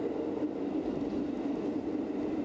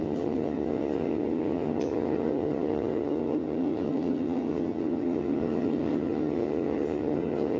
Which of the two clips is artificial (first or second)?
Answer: second